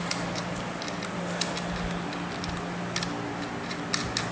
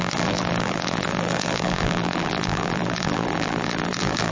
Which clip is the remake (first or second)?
second